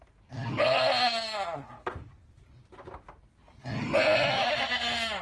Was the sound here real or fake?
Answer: real